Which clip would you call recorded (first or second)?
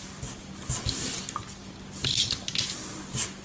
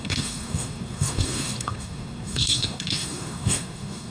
first